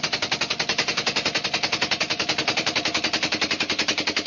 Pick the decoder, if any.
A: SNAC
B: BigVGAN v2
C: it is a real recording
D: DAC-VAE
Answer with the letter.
B